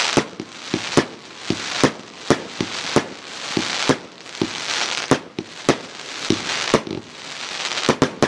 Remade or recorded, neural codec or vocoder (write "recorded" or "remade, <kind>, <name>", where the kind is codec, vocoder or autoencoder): recorded